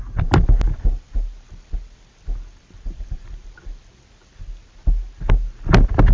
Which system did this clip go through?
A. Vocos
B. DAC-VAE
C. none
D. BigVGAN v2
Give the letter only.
C